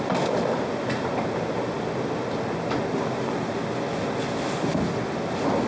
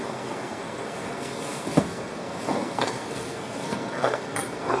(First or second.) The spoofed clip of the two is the second